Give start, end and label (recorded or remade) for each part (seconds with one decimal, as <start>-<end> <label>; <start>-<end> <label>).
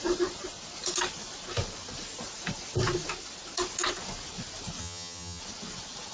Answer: 0.0-4.8 recorded; 4.8-5.4 remade; 5.4-6.1 recorded